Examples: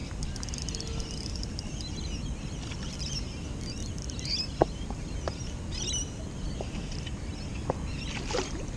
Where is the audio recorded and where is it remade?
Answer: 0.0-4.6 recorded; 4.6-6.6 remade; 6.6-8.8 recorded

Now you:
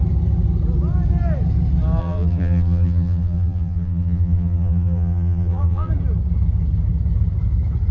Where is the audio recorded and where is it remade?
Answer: 0.0-2.0 recorded; 2.0-5.9 remade; 5.9-7.9 recorded

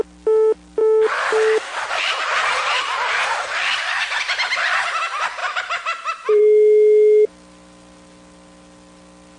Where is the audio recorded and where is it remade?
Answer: 0.0-2.5 recorded; 2.5-3.6 remade; 3.6-5.4 recorded; 5.4-6.4 remade; 6.4-9.4 recorded

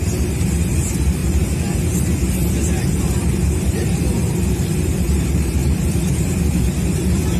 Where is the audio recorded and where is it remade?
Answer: 0.0-1.2 remade; 1.2-3.0 recorded; 3.0-7.4 remade

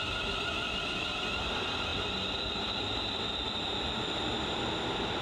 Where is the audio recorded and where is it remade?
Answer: 0.0-5.2 recorded

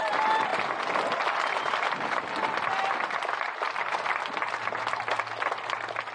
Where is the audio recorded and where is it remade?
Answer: 0.0-6.1 recorded

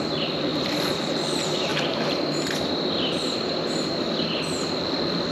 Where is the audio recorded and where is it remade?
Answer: 0.0-1.7 remade; 1.7-4.8 recorded; 4.8-5.3 remade

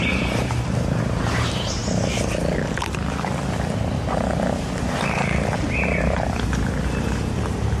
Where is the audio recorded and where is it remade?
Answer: 0.0-1.8 remade; 1.8-6.0 recorded; 6.0-7.8 remade